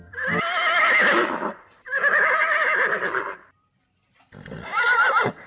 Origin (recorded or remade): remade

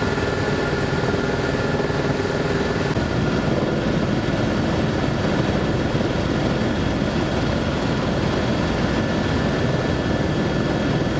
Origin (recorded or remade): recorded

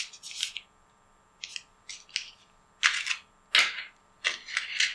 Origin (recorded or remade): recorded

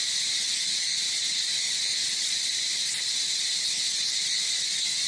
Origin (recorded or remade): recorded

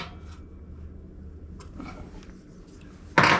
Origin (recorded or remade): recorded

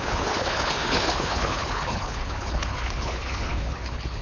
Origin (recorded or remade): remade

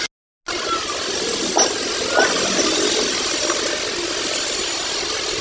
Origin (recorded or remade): recorded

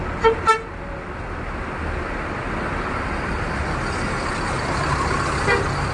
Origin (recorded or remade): recorded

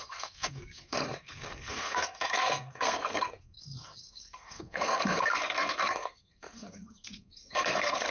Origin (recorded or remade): remade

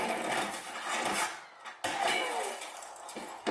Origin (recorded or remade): recorded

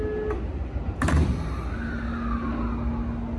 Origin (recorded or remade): recorded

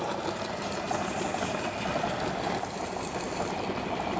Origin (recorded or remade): recorded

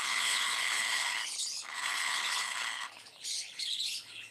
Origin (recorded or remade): remade